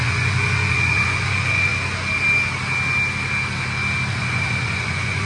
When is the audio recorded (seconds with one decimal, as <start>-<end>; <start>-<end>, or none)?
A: 1.7-4.1